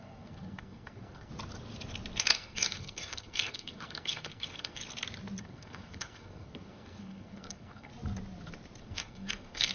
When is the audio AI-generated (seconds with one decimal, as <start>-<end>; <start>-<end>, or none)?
0.0-1.3; 2.2-4.8; 5.4-7.9; 8.8-9.7